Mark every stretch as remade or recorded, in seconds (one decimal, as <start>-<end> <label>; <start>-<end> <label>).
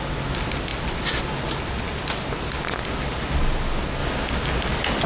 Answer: 0.0-5.1 recorded